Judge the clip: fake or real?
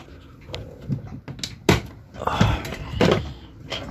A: real